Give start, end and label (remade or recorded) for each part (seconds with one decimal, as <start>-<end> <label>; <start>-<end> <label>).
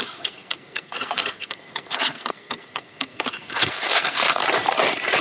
0.0-4.4 remade; 4.4-5.2 recorded